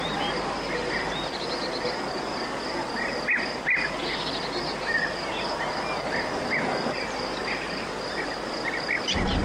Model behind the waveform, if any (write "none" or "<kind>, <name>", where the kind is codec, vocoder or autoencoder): none